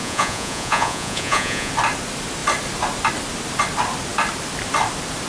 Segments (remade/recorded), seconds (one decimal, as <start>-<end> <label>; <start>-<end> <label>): 0.0-1.7 remade; 1.7-5.3 recorded